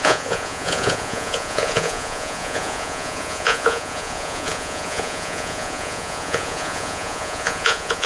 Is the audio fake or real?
fake